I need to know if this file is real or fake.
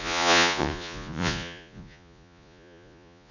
fake